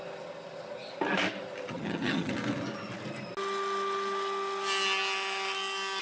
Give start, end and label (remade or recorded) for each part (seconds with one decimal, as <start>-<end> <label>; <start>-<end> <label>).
0.0-1.7 recorded; 1.7-2.3 remade; 2.3-6.0 recorded